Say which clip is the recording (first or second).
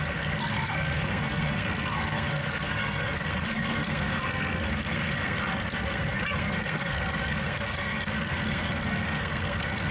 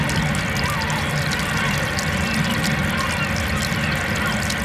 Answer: second